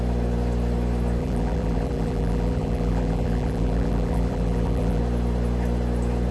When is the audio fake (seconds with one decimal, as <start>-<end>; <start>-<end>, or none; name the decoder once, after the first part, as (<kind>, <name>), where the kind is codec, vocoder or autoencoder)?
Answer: 1.2-5.0 (vocoder, BigVGAN v2)